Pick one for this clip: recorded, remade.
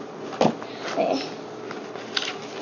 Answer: recorded